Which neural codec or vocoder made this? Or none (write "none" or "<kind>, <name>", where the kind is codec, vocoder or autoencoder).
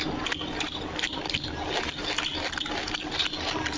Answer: none